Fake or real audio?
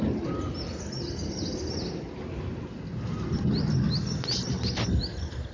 real